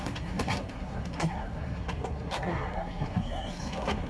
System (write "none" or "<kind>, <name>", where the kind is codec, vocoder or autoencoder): codec, SNAC